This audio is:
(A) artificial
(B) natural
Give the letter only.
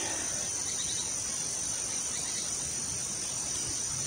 B